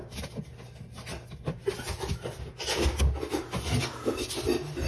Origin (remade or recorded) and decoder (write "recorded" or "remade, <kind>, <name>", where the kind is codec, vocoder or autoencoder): recorded